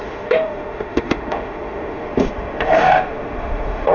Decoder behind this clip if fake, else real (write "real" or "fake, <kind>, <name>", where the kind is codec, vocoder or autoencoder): fake, autoencoder, DAC-VAE